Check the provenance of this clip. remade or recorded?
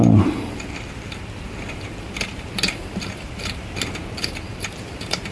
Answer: remade